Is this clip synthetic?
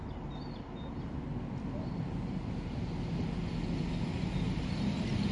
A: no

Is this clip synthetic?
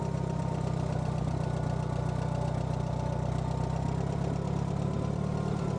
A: no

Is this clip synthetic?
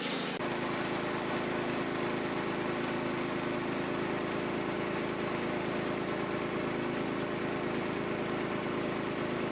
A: no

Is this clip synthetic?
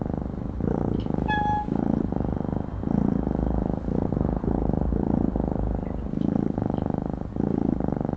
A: no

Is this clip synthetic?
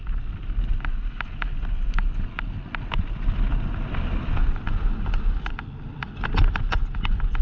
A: no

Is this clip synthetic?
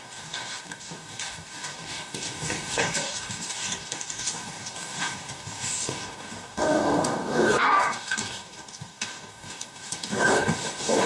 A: yes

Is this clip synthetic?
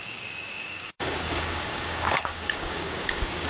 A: yes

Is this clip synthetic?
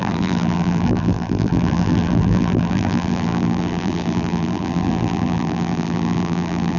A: yes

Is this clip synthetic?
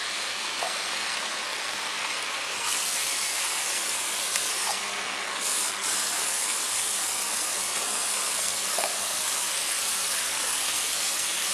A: yes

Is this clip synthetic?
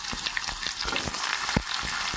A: no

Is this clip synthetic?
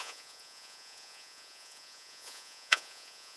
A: yes